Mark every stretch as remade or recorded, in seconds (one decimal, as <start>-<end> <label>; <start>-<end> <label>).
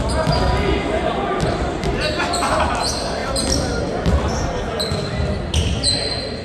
0.0-6.4 recorded